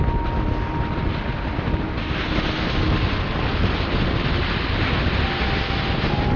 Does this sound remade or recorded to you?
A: recorded